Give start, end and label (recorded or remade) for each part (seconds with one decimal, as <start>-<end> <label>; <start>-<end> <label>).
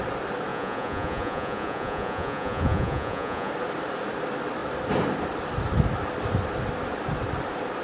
0.0-0.5 recorded; 0.5-3.5 remade; 3.5-7.8 recorded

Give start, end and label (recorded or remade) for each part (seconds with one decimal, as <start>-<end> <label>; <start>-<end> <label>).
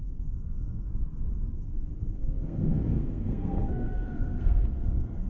0.0-0.9 remade; 0.9-2.0 recorded; 2.0-5.3 remade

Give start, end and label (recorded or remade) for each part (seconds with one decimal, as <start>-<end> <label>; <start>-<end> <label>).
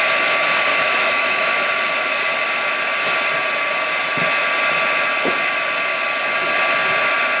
0.0-0.7 recorded; 0.7-1.5 remade; 1.5-7.4 recorded